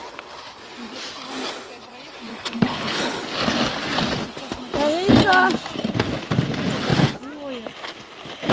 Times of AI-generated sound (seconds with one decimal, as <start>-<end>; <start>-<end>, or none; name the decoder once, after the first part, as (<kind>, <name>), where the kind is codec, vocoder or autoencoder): 2.3-3.2 (codec, HILCodec)